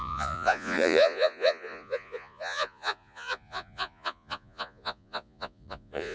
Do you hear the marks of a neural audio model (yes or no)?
yes